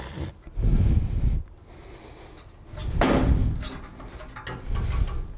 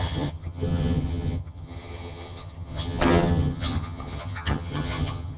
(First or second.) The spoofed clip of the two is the second